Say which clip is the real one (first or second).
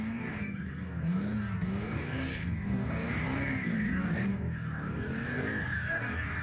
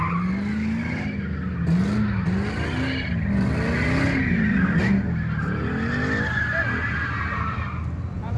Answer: second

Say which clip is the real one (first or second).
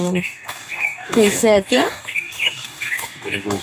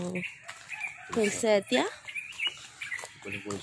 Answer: second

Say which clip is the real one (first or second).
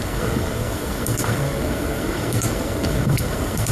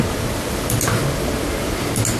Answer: second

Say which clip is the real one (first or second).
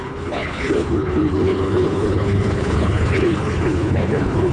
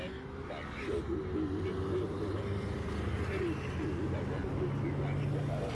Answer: second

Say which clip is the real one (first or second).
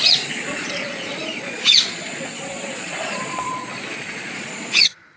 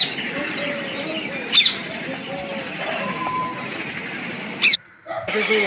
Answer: second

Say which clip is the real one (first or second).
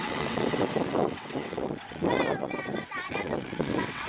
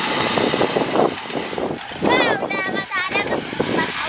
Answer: second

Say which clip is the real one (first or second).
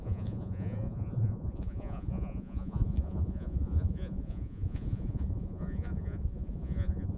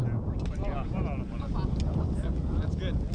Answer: second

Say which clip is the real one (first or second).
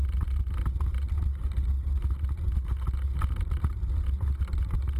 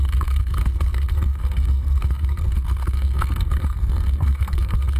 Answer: first